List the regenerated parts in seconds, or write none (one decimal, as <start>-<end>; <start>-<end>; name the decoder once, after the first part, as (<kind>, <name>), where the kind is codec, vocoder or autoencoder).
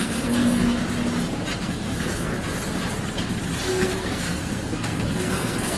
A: 0.0-0.8 (codec, SNAC); 1.6-2.3; 3.7-5.8